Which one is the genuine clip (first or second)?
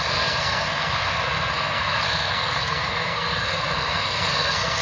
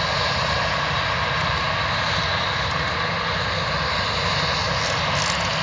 second